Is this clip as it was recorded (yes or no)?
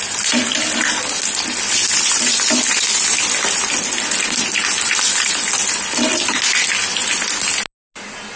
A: yes